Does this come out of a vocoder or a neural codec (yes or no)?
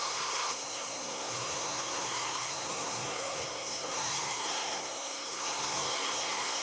yes